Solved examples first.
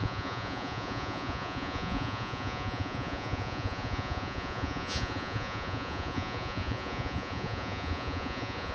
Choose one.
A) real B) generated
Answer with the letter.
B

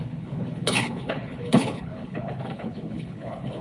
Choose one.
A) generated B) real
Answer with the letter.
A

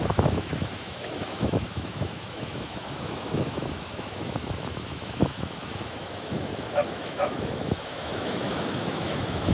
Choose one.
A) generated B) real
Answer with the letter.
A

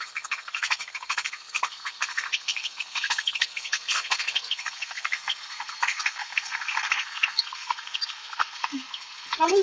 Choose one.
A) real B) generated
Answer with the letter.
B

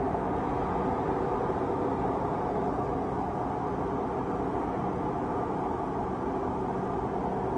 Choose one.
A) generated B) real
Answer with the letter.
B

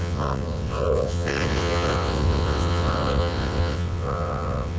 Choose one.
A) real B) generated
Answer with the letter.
B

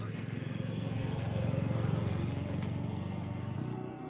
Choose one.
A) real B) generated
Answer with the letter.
B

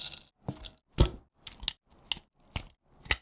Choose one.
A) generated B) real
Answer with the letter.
B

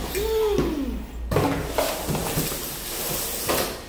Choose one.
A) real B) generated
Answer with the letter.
A